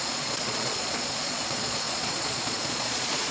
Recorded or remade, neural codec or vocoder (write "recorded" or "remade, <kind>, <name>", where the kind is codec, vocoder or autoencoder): remade, vocoder, Vocos